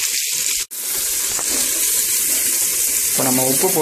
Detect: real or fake real